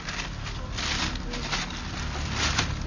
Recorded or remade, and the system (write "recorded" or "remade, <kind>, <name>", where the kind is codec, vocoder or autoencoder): recorded